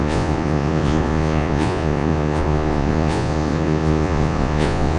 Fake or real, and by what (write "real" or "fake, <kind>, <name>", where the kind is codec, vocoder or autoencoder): fake, vocoder, Vocos